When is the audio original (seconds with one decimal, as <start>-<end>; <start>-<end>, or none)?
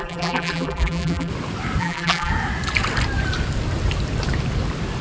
1.3-1.8; 2.3-5.0